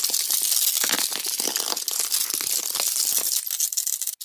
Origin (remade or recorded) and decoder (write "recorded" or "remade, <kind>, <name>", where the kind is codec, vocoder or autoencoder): recorded